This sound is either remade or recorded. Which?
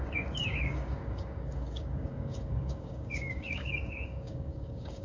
remade